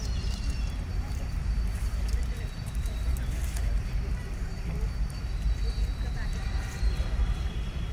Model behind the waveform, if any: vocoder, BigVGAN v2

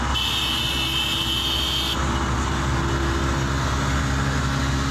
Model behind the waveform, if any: none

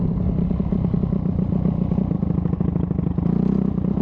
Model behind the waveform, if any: none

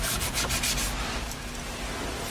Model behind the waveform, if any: none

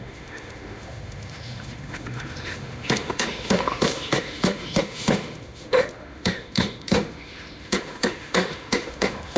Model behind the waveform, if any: autoencoder, DAC-VAE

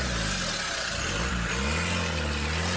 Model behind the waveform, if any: none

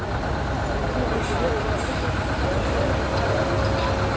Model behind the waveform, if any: none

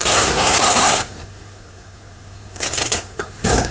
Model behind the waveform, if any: codec, SNAC